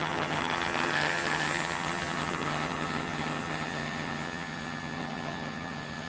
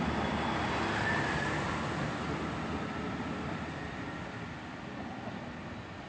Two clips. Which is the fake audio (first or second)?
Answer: first